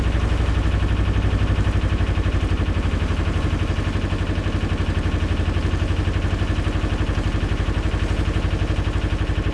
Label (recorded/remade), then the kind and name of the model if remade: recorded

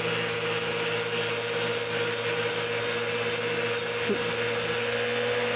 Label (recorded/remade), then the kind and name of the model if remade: recorded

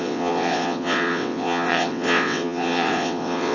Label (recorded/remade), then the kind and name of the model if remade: remade, vocoder, WaveNeXt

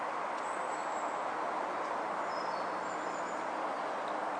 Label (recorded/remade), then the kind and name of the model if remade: recorded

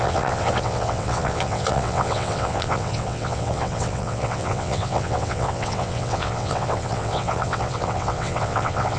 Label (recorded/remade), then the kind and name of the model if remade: remade, vocoder, WaveNeXt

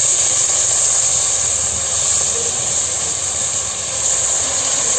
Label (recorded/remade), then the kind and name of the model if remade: recorded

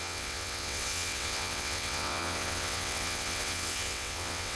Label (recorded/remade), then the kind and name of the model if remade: remade, vocoder, WaveNeXt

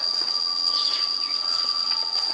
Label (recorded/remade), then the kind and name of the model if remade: remade, vocoder, WaveNeXt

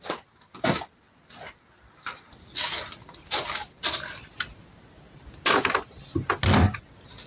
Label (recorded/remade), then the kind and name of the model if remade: recorded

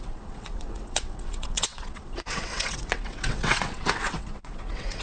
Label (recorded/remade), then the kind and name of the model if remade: remade, vocoder, WaveNeXt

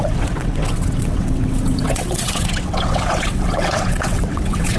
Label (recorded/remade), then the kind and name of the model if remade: remade, vocoder, WaveNeXt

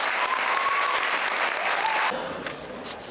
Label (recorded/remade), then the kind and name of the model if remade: recorded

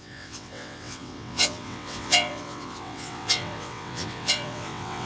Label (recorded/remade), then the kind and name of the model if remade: remade, vocoder, WaveNeXt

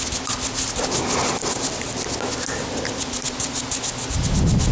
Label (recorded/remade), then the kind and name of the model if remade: recorded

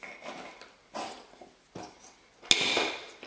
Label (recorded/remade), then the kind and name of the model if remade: recorded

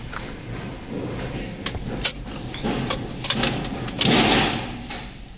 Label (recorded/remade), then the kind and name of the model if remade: recorded